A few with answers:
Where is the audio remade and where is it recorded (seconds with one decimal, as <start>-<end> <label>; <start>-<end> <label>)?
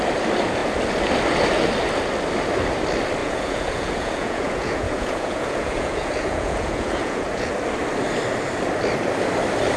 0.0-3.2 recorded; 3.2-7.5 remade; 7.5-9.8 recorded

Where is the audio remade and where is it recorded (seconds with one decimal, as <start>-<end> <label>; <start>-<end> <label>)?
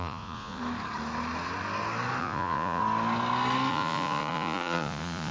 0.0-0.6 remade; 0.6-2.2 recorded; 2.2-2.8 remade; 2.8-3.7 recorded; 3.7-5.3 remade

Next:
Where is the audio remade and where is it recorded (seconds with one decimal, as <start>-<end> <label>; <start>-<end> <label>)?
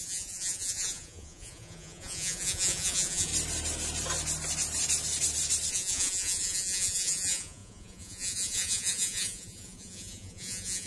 0.0-3.3 remade; 3.3-5.7 recorded; 5.7-10.9 remade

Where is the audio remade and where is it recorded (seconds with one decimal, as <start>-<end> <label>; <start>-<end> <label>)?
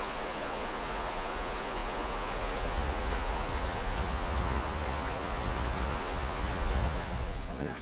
0.0-7.8 remade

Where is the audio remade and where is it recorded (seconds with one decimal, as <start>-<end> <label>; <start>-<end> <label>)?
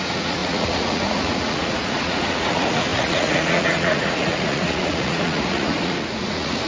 0.0-6.7 remade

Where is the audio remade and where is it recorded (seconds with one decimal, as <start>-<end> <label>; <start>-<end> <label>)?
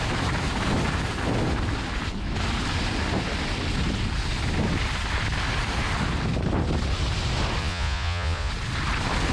0.0-7.6 recorded; 7.6-8.5 remade; 8.5-9.3 recorded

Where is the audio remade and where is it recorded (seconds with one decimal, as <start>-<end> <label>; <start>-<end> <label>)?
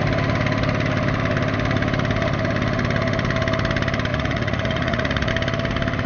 0.0-4.1 recorded; 4.1-5.3 remade; 5.3-6.1 recorded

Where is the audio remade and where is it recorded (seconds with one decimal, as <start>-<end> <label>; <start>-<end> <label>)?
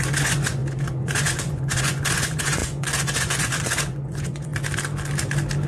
0.0-4.5 remade; 4.5-5.7 recorded